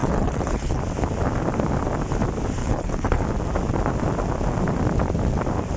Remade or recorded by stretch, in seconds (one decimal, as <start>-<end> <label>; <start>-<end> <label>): 0.0-0.8 remade; 0.8-2.6 recorded; 2.6-3.2 remade; 3.2-5.8 recorded